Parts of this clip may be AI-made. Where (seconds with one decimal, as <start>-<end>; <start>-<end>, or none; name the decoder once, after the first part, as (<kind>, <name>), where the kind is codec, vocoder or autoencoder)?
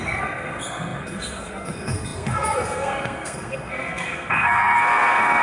0.0-5.4 (codec, SNAC)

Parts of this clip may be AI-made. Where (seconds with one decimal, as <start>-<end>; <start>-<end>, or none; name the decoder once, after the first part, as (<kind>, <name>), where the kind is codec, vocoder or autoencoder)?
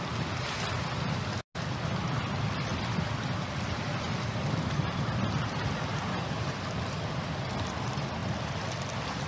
none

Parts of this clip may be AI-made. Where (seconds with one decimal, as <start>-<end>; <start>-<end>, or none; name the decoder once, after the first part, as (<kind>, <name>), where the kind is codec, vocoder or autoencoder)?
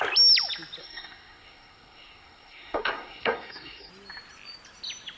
0.8-3.9 (codec, SNAC)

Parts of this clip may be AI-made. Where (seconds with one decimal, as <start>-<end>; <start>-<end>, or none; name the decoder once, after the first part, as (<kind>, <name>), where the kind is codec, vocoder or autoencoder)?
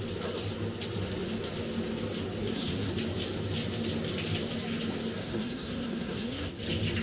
2.4-2.9 (codec, SNAC); 5.2-6.5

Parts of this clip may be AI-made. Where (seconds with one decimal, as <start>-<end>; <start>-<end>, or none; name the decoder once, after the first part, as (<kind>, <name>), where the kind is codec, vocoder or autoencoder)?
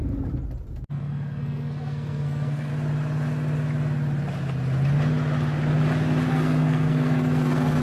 1.0-2.7 (codec, SNAC); 6.3-7.8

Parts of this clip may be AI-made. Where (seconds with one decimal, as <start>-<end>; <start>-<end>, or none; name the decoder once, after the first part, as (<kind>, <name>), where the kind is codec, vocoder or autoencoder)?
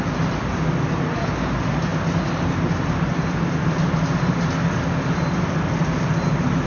none